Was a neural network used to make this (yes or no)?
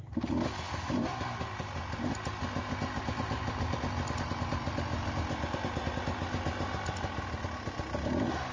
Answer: no